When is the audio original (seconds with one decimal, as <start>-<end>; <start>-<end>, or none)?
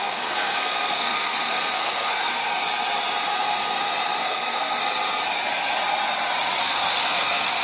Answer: 2.5-4.2; 4.8-6.6